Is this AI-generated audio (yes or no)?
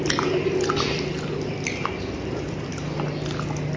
no